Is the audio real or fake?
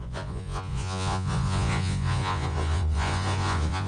fake